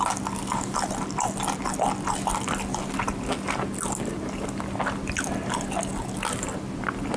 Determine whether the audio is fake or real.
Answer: real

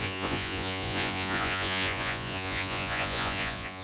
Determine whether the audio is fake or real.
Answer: fake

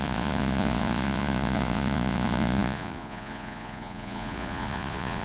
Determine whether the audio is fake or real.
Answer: fake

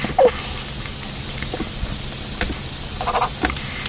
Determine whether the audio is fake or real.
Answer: real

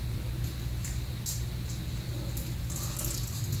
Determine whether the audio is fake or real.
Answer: real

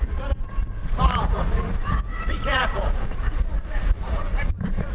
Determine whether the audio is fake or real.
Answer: fake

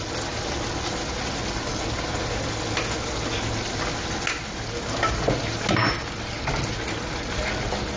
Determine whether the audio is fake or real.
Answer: real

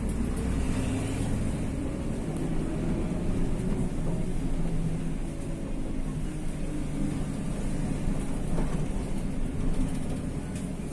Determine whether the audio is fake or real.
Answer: real